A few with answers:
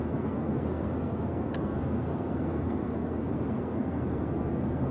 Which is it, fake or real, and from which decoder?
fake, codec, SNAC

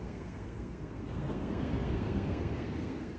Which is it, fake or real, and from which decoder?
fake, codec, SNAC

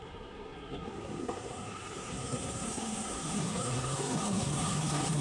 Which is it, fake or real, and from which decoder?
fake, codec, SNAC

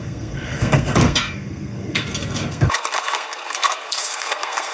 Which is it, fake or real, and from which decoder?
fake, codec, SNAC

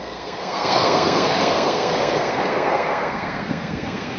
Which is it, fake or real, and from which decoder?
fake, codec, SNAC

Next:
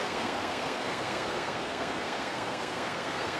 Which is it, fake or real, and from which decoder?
fake, codec, SNAC